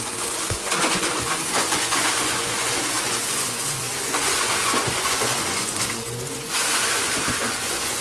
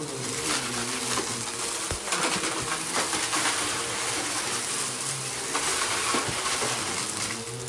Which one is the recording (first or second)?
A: second